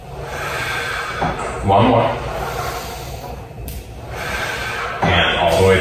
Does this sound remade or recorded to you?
recorded